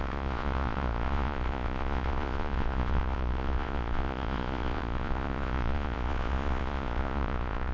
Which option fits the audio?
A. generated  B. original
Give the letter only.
A